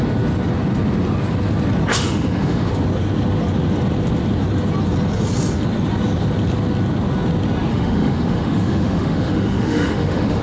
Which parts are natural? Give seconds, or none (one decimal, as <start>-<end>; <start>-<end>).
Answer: 0.0-1.9; 2.7-7.7